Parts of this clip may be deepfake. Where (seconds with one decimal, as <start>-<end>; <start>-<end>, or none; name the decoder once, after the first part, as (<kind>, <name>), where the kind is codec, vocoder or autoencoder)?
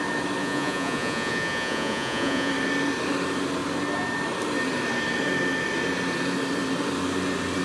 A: 0.4-2.5 (vocoder, Vocos)